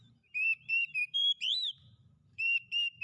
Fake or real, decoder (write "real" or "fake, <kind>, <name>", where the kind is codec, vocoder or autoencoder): fake, vocoder, BigVGAN v2